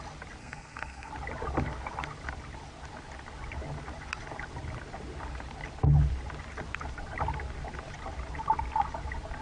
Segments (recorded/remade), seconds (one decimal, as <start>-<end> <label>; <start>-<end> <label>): 0.0-0.4 recorded; 0.4-1.1 remade; 1.1-9.4 recorded